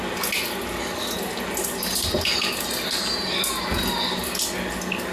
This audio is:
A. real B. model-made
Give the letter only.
A